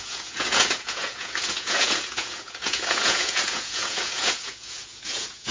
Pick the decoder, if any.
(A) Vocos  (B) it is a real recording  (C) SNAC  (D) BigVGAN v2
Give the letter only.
A